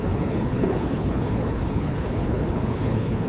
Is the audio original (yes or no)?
no